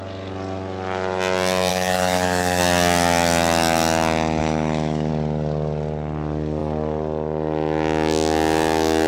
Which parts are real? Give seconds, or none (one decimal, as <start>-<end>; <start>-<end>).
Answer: 0.0-1.7; 2.6-4.4; 5.1-9.1